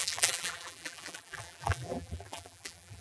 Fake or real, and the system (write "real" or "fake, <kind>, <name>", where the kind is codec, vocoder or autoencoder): fake, vocoder, BigVGAN v2